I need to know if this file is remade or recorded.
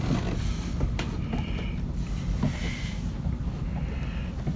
recorded